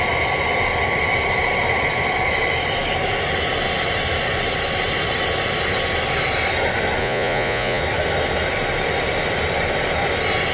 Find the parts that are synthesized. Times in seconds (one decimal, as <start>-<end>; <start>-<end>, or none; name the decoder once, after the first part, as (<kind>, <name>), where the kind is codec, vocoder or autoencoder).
7.0-7.8 (vocoder, Vocos)